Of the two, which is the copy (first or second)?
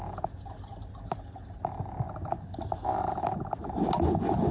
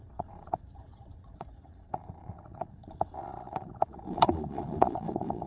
second